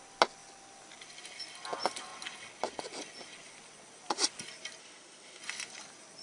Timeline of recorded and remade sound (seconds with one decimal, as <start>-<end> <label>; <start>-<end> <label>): 0.0-4.8 recorded; 4.8-5.4 remade; 5.4-6.2 recorded